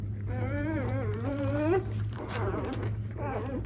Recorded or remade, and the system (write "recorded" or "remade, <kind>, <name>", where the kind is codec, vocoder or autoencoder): remade, vocoder, BigVGAN v2